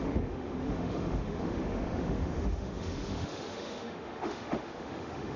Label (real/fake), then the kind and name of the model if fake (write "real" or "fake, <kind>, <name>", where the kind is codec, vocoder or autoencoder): fake, autoencoder, DAC-VAE